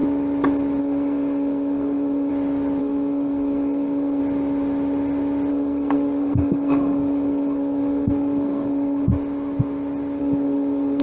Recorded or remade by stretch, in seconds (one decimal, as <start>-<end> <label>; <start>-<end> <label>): 0.0-0.8 recorded; 0.8-2.3 remade; 2.3-2.8 recorded; 2.8-4.2 remade; 4.2-5.5 recorded; 5.5-9.1 remade; 9.1-10.2 recorded; 10.2-11.0 remade